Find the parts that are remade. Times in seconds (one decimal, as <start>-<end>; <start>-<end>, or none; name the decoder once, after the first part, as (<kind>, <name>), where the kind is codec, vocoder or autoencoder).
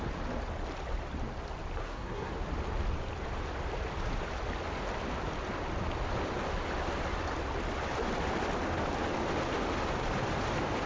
1.8-2.3 (codec, SNAC)